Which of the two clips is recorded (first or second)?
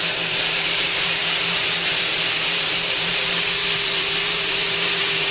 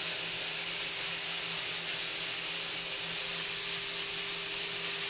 second